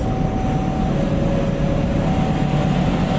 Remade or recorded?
recorded